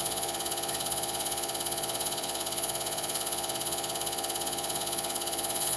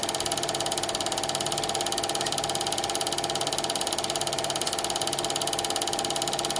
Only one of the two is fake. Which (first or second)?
first